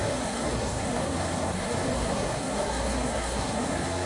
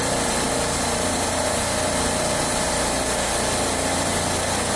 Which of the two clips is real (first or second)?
second